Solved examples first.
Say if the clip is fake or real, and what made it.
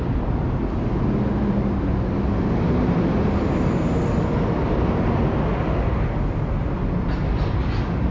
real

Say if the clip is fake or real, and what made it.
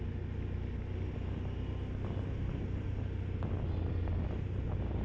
real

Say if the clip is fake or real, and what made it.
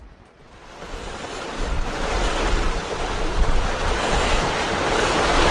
real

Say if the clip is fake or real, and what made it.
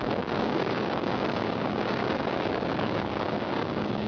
fake, codec, DAC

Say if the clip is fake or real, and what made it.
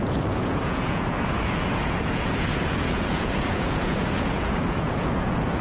fake, vocoder, Vocos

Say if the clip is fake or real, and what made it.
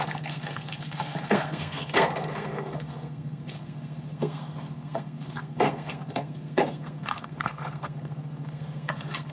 fake, codec, SNAC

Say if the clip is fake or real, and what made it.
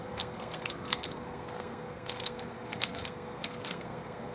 fake, codec, SNAC